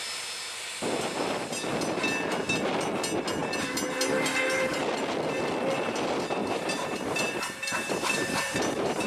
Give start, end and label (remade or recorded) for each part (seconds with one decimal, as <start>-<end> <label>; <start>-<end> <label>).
0.0-6.4 recorded; 6.4-9.1 remade